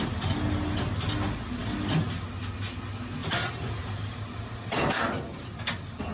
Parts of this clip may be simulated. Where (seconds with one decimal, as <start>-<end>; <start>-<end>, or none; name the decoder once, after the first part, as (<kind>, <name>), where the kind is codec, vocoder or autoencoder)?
none